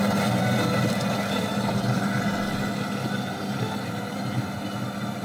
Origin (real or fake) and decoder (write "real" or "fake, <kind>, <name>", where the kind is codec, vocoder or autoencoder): real